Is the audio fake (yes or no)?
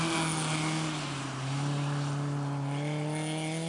no